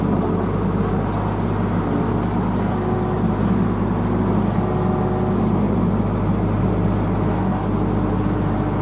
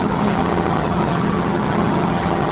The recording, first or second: first